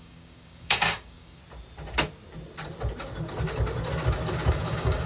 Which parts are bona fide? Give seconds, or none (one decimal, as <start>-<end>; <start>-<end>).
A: 1.4-4.5